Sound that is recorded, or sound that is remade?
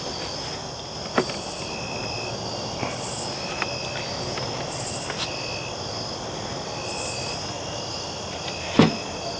recorded